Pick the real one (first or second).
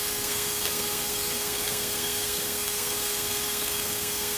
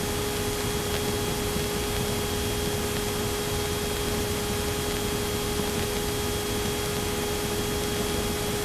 second